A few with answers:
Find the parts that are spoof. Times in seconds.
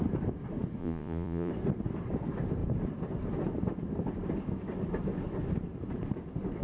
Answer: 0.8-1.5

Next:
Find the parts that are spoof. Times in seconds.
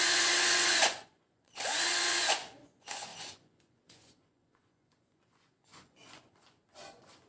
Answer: 0.0-7.3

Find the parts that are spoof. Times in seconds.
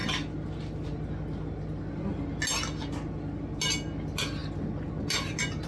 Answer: none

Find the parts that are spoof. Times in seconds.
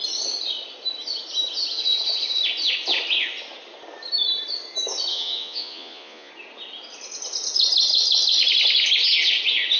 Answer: 5.1-6.3